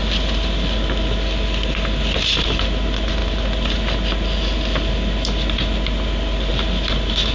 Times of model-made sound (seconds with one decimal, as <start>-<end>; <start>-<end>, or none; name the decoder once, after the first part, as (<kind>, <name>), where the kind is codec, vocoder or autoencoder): none